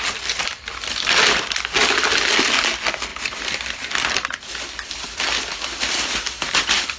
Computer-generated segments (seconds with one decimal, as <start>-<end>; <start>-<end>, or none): 3.1-3.9